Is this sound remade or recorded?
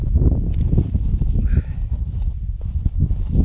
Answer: recorded